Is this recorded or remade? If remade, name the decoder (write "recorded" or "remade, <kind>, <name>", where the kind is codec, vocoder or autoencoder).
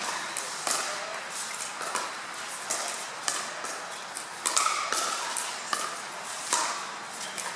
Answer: recorded